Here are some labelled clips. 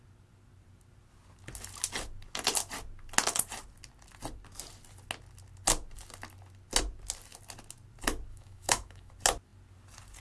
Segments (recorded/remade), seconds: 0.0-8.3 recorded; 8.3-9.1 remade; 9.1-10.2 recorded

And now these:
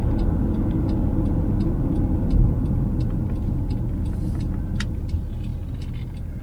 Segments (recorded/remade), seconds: 0.0-6.4 recorded

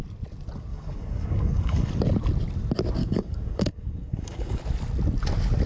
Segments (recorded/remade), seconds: 0.0-0.7 recorded; 0.7-1.9 remade; 1.9-3.0 recorded; 3.0-4.6 remade; 4.6-5.7 recorded

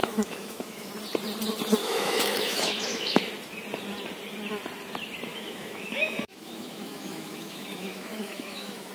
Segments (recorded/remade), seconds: 0.0-0.9 remade; 0.9-1.8 recorded; 1.8-3.3 remade; 3.3-5.3 recorded; 5.3-8.9 remade

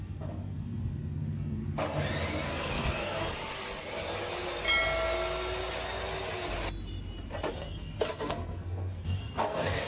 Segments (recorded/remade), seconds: 0.0-1.6 remade; 1.6-2.5 recorded; 2.5-3.4 remade; 3.4-7.5 recorded; 7.5-9.9 remade